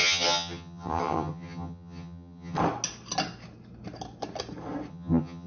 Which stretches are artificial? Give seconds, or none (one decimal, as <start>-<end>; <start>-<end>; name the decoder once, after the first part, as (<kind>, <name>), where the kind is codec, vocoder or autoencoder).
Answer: 0.0-2.6 (vocoder, HiFi-GAN); 4.9-5.5